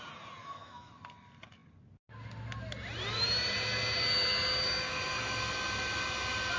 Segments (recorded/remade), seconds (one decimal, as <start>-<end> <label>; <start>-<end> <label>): 0.0-0.4 recorded; 0.4-0.9 remade; 0.9-6.6 recorded

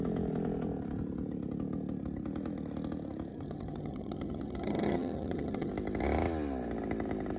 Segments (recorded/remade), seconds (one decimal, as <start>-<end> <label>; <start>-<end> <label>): 0.0-3.3 recorded; 3.3-5.7 remade; 5.7-7.4 recorded

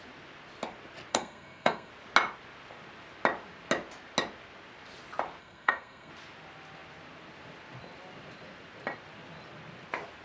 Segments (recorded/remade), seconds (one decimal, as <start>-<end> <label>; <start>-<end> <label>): 0.0-1.1 recorded; 1.1-1.9 remade; 1.9-5.4 recorded; 5.4-6.1 remade; 6.1-10.2 recorded

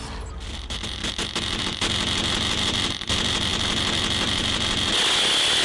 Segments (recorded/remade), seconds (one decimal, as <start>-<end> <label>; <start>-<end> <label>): 0.0-5.6 recorded

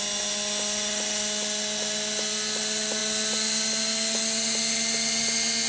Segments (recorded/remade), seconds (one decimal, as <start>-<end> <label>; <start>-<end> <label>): 0.0-5.7 recorded